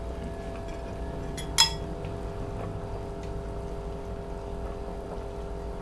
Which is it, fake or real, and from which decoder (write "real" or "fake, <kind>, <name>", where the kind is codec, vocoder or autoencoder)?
real